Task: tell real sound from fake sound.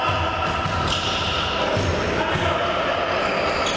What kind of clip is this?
real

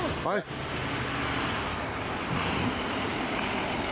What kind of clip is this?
real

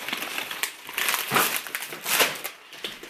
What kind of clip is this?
fake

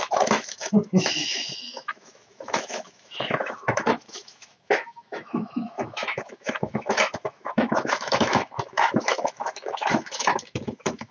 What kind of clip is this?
fake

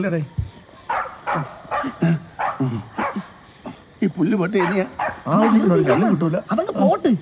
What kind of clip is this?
fake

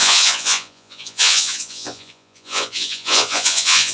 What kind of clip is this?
fake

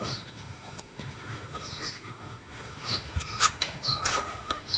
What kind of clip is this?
fake